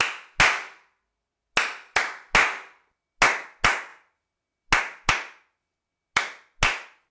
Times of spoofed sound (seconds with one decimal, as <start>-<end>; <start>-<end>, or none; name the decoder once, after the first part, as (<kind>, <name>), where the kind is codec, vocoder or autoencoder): none